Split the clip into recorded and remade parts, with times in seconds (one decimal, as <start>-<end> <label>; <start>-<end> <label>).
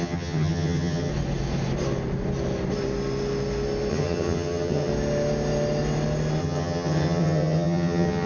0.0-1.1 remade; 1.1-3.9 recorded; 3.9-4.9 remade; 4.9-6.4 recorded; 6.4-8.3 remade